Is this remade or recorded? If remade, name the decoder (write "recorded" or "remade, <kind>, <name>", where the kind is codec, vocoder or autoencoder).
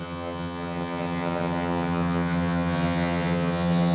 remade, vocoder, HiFi-GAN